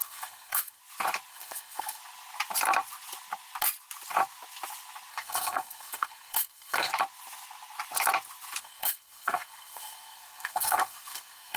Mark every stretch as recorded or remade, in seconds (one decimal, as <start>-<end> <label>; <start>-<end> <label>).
0.0-0.8 remade; 0.8-1.3 recorded; 1.3-2.0 remade; 2.0-5.1 recorded; 5.1-6.9 remade; 6.9-8.6 recorded; 8.6-11.6 remade